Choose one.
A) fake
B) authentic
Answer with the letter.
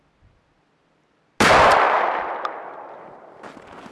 B